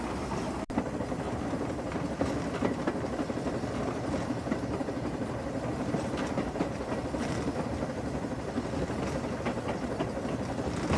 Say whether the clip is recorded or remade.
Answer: recorded